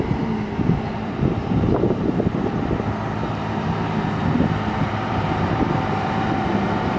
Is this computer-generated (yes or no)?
yes